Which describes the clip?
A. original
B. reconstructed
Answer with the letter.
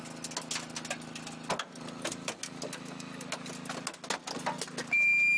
A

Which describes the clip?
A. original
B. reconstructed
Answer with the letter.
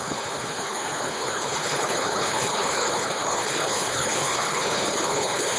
B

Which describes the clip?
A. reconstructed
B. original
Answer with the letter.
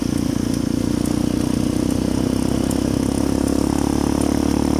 B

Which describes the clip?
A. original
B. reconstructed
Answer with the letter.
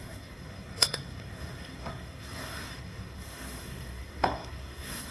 B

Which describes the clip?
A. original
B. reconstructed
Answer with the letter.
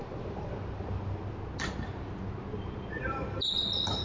A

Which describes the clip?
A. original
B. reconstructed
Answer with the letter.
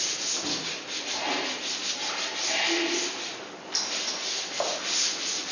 A